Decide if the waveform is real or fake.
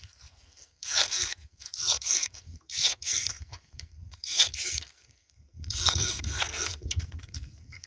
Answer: fake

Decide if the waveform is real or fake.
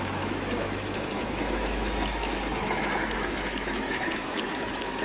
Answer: fake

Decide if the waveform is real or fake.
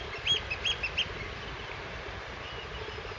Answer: real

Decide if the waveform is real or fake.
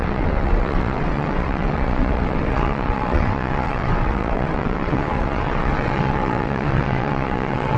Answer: fake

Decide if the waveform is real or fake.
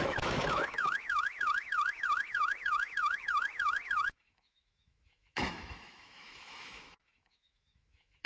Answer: fake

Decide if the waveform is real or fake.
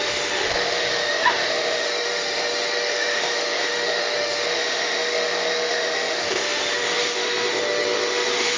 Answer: fake